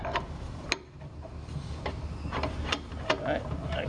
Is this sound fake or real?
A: real